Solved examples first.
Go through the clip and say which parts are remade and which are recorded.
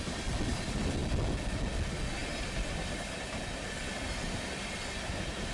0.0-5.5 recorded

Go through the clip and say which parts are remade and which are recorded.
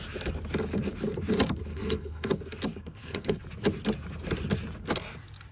0.0-1.7 recorded; 1.7-2.3 remade; 2.3-2.7 recorded; 2.7-3.4 remade; 3.4-5.5 recorded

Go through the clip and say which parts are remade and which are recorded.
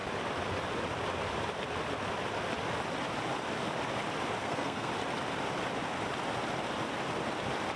0.0-4.4 recorded; 4.4-4.9 remade; 4.9-7.8 recorded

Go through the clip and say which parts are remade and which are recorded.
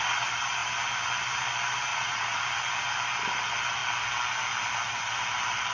0.0-1.9 recorded; 1.9-2.4 remade; 2.4-5.7 recorded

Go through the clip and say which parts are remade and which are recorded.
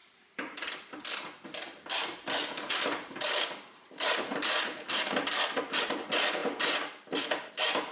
0.0-0.7 remade; 0.7-2.4 recorded; 2.4-5.2 remade; 5.2-7.9 recorded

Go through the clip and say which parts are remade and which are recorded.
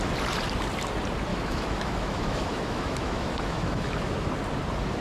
0.0-1.3 recorded; 1.3-4.3 remade; 4.3-5.0 recorded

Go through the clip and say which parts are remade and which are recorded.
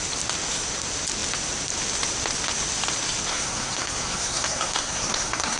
0.0-3.3 recorded; 3.3-5.6 remade